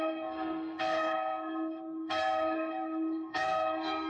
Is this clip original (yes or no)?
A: no